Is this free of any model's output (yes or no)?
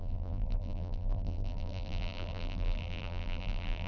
no